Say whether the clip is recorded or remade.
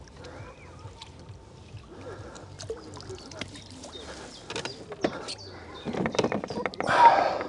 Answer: recorded